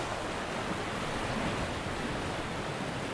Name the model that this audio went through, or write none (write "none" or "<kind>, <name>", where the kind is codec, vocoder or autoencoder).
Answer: none